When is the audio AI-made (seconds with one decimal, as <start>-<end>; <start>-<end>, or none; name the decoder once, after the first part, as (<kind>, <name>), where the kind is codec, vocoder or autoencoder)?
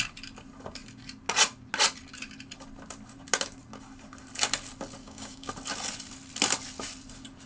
5.0-5.5 (codec, DAC)